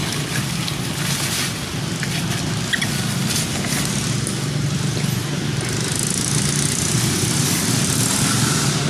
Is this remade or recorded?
recorded